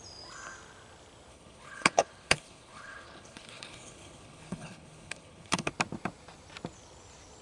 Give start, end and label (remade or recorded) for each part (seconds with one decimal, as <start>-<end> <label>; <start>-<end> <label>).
0.0-1.3 recorded; 1.3-5.7 remade; 5.7-7.4 recorded